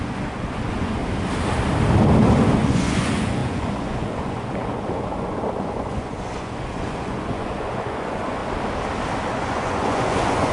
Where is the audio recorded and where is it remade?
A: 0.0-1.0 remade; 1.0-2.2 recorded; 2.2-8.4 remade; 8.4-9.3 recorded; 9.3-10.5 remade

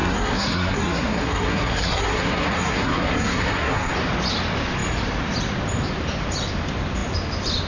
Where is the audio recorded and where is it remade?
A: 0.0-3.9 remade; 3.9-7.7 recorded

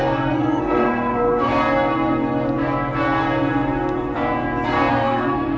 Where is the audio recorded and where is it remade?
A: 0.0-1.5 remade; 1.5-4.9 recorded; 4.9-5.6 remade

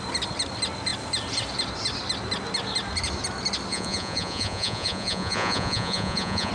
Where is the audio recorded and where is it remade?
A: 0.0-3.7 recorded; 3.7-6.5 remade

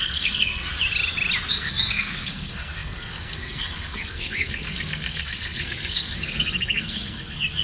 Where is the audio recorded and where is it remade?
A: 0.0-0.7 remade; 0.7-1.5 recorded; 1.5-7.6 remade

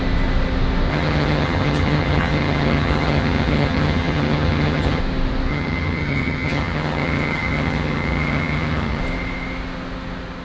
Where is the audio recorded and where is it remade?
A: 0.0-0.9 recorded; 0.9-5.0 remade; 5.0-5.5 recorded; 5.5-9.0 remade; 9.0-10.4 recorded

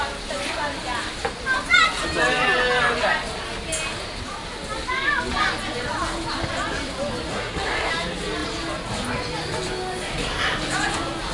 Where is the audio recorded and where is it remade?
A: 0.0-7.3 recorded; 7.3-7.9 remade; 7.9-11.3 recorded